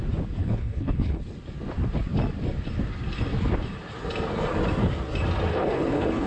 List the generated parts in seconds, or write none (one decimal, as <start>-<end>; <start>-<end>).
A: 0.4-1.2; 5.5-6.3